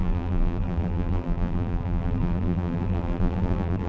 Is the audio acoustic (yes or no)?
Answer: no